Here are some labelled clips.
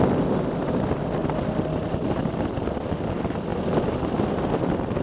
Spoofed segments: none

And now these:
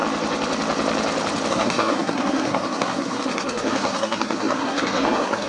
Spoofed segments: 1.5-5.5

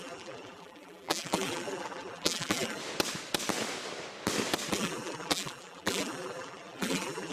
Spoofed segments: 0.0-2.8; 4.7-7.3

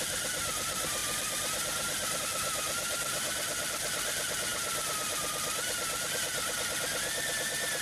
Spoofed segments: 1.0-2.2

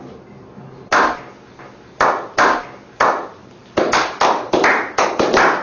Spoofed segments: none

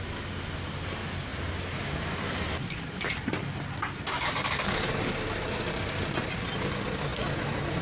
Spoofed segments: none

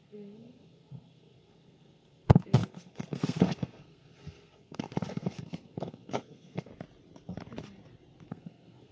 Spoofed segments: 0.0-6.7; 8.3-8.9